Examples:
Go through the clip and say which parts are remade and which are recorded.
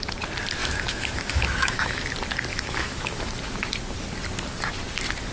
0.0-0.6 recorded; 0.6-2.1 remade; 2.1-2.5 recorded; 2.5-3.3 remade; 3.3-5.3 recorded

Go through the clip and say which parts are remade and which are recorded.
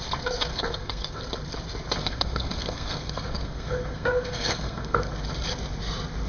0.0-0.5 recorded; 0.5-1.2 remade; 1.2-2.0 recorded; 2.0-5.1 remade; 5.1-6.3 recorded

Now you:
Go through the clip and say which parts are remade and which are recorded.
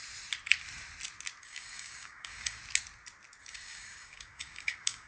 0.0-1.4 recorded; 1.4-2.6 remade; 2.6-3.4 recorded; 3.4-5.1 remade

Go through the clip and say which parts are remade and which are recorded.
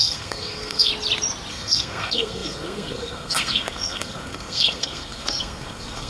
0.0-0.9 remade; 0.9-1.5 recorded; 1.5-6.1 remade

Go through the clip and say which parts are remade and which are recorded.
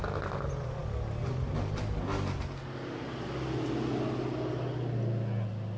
0.0-5.8 recorded